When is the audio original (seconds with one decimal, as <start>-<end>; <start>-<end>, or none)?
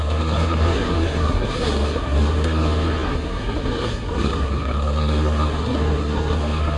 none